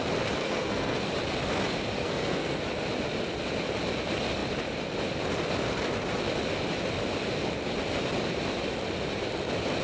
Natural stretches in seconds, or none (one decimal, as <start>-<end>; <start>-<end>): 0.0-0.4; 1.1-2.0; 2.6-9.8